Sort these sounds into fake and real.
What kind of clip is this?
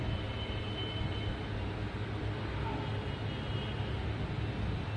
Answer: real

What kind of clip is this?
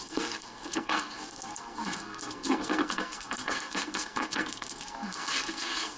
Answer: fake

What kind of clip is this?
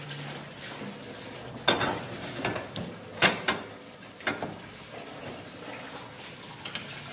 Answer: real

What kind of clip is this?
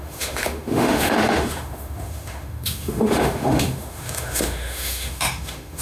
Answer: fake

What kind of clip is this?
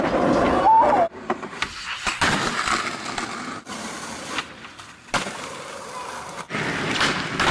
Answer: fake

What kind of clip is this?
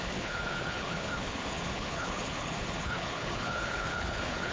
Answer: fake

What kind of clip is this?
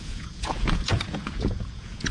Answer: fake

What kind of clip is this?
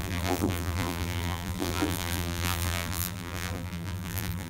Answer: fake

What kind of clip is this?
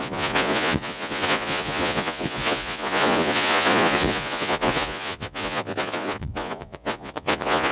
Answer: fake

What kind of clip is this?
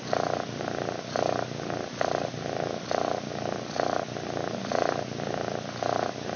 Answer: real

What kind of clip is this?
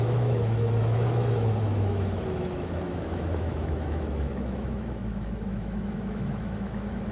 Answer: fake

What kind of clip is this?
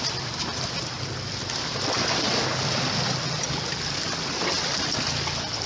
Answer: real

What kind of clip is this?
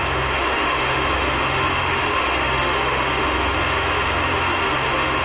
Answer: fake